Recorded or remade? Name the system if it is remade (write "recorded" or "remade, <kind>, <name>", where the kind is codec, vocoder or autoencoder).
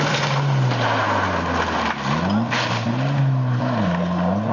recorded